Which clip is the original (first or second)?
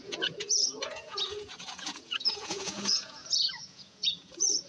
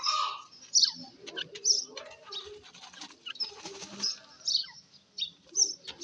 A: second